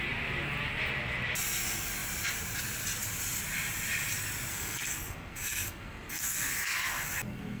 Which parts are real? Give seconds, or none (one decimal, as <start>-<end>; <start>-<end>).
0.0-4.5